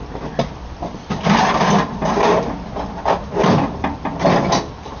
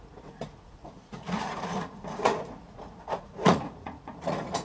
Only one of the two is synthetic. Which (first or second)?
second